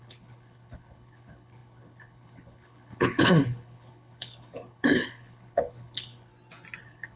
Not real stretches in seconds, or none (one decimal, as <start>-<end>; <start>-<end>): 0.0-6.3; 6.8-7.2